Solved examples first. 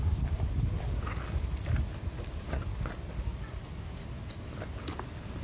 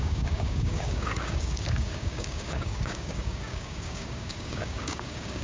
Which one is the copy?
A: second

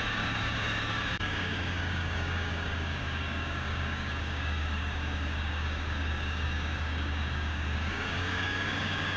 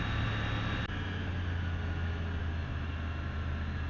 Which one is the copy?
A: first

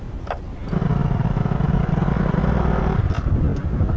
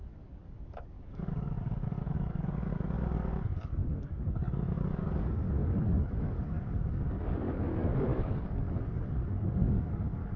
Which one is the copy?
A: second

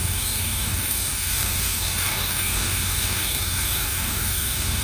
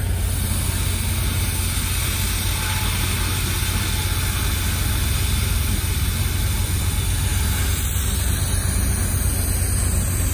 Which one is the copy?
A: first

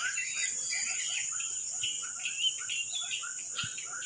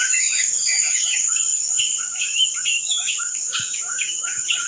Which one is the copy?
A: second